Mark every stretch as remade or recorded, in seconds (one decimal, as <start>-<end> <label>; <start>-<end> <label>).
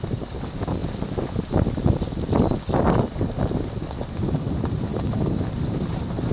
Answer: 0.0-0.8 remade; 0.8-4.4 recorded; 4.4-6.3 remade